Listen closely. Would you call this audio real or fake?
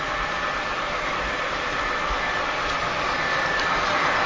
real